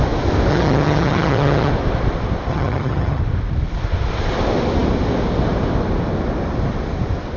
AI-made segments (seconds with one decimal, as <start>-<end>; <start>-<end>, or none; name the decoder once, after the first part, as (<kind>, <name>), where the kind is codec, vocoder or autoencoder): 0.5-1.7 (vocoder, HiFi-GAN); 2.5-3.2